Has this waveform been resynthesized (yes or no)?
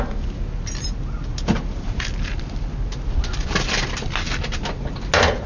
no